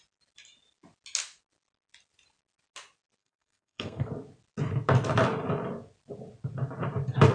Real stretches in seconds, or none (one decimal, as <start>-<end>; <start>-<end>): 0.0-3.2; 4.1-7.3

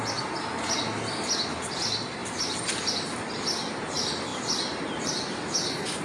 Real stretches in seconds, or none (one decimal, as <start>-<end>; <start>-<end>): 0.0-2.2; 2.9-4.3; 5.1-6.0

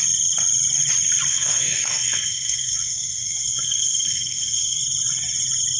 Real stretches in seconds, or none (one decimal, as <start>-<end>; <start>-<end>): 0.0-1.3; 4.8-5.8

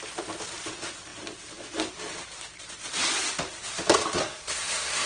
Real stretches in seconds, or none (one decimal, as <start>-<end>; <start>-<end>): 0.0-4.2

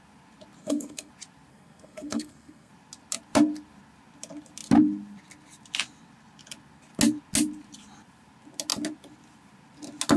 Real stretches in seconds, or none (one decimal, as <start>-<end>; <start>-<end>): 0.0-0.6; 1.1-1.5; 2.7-10.2

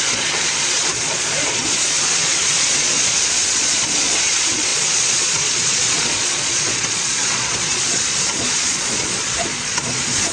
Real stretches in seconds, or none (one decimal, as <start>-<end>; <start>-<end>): none

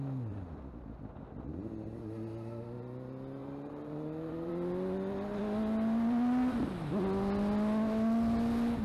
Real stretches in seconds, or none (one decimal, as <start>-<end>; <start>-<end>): 0.0-3.4; 4.5-8.8

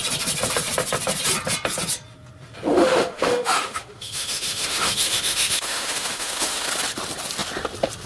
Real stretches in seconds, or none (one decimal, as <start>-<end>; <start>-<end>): 0.0-2.7; 6.7-8.1